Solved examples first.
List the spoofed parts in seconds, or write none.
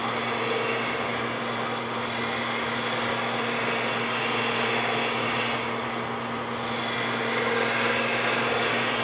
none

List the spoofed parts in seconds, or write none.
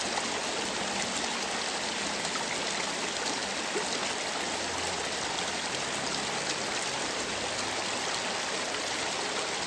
none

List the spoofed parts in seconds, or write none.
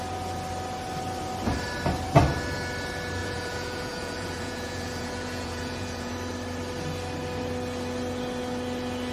3.2-6.1 (vocoder, Vocos)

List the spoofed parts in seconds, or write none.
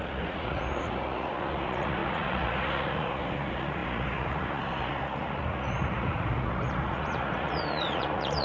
0.0-8.4 (vocoder, Vocos)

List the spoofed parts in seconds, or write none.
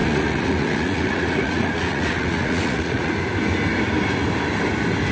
0.0-3.1 (vocoder, Vocos)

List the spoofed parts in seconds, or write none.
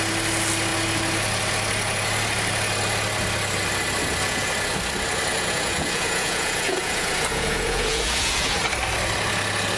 4.0-4.5 (vocoder, Vocos); 5.3-8.6